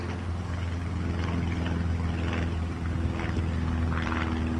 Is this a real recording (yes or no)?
yes